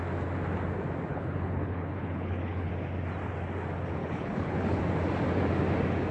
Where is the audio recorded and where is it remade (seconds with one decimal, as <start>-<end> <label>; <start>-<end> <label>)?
0.0-1.1 recorded; 1.1-2.7 remade; 2.7-4.0 recorded; 4.0-4.8 remade; 4.8-6.1 recorded

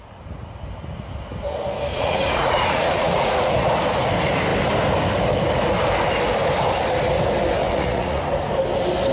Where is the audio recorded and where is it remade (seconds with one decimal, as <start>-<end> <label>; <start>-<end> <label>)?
0.0-1.9 recorded; 1.9-3.7 remade; 3.7-7.6 recorded; 7.6-8.2 remade; 8.2-9.1 recorded

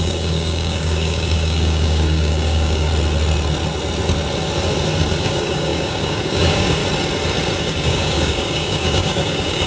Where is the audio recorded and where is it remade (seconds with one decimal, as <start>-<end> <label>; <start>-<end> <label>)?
0.0-2.9 remade; 2.9-5.2 recorded; 5.2-6.8 remade; 6.8-7.6 recorded; 7.6-9.7 remade

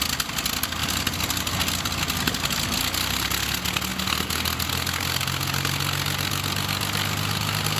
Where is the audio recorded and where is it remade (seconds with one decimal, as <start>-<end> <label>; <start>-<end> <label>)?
0.0-7.8 recorded

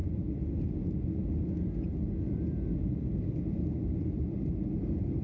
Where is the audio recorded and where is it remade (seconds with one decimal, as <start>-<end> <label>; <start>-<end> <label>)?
0.0-5.2 recorded

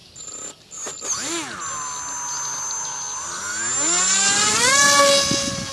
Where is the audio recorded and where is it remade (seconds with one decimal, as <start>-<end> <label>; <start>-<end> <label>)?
0.0-5.7 recorded